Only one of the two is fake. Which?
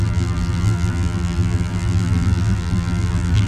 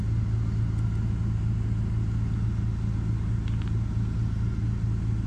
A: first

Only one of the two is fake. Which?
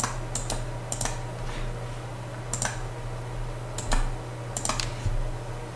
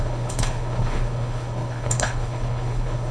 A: second